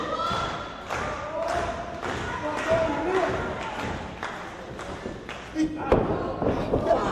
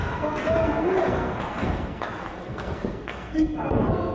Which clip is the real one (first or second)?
first